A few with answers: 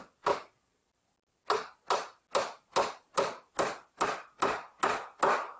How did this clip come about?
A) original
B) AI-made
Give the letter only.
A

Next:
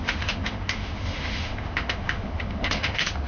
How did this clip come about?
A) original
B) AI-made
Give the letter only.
B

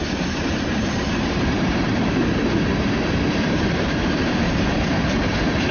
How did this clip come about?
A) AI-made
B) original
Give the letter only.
A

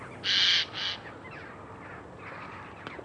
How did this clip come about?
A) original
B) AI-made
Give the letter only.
A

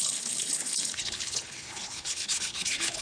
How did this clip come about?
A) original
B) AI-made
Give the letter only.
B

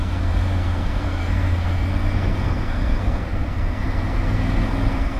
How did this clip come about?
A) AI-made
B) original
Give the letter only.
A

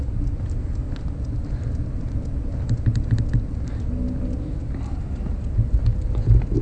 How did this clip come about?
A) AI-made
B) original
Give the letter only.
B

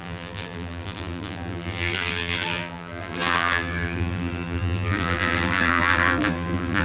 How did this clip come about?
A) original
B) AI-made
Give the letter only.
B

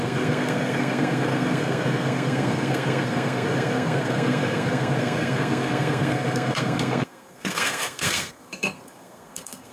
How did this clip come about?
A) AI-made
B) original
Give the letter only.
A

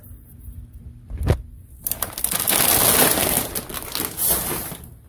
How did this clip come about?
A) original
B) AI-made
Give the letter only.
A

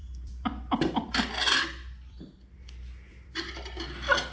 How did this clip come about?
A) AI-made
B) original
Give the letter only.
A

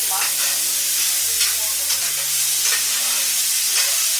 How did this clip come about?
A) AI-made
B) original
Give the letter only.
B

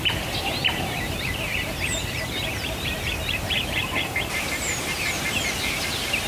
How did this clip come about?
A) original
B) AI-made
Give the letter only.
B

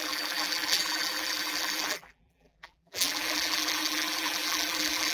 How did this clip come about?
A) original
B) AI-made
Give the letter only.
B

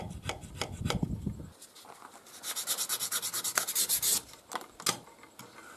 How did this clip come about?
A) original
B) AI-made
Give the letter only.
A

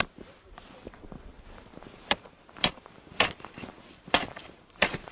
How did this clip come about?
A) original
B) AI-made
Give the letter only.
B